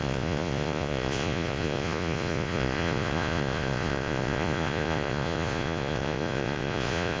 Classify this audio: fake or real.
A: fake